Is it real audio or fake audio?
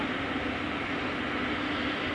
real